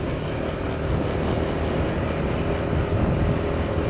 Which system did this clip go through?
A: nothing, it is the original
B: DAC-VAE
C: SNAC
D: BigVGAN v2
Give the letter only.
A